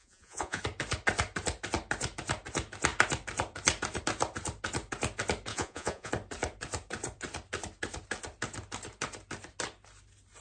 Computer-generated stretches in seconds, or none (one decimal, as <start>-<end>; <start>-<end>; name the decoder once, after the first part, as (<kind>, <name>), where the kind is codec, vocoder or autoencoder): 0.0-0.6 (vocoder, Vocos); 5.5-6.1